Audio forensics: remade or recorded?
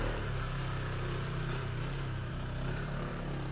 remade